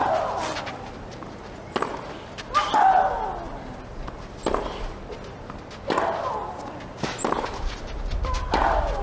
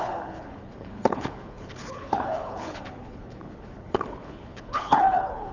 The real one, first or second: first